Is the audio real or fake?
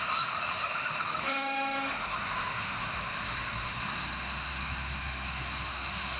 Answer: fake